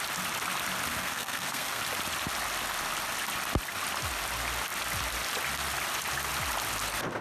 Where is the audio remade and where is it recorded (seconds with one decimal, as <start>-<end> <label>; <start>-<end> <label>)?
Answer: 0.0-0.9 recorded; 0.9-1.8 remade; 1.8-7.2 recorded